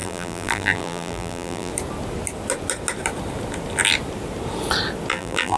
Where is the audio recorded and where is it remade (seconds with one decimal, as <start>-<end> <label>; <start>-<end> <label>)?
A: 0.0-1.7 remade; 1.7-5.1 recorded; 5.1-5.6 remade